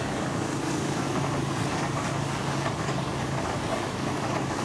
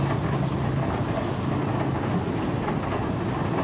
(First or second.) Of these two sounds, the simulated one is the first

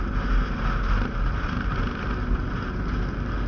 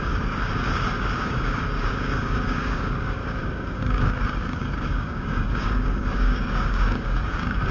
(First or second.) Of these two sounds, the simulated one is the second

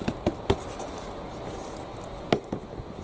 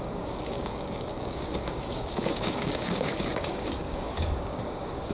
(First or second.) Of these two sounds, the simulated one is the second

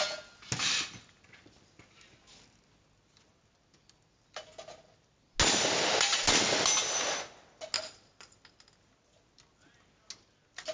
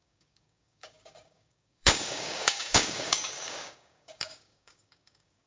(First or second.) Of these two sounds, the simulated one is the second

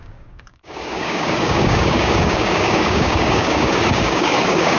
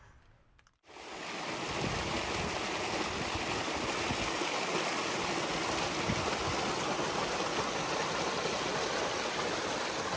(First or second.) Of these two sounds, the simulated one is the first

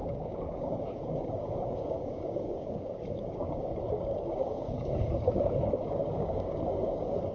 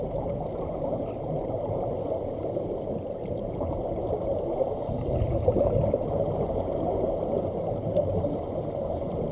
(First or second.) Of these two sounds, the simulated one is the first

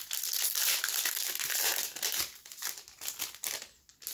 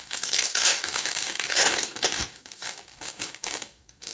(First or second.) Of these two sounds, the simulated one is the second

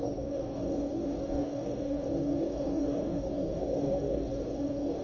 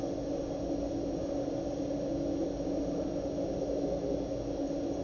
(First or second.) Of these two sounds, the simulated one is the first